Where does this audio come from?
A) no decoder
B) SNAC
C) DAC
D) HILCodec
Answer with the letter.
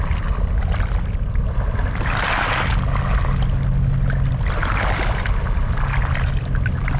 A